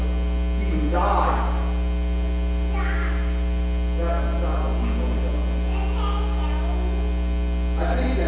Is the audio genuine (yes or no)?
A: yes